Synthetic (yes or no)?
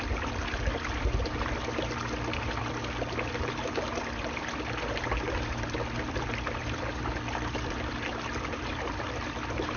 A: no